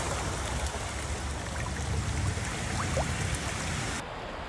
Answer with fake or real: real